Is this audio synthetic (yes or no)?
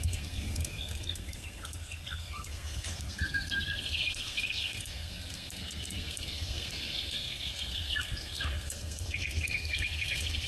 yes